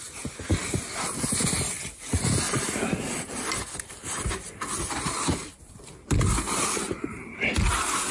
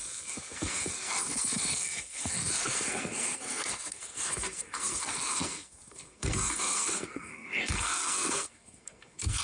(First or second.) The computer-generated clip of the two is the second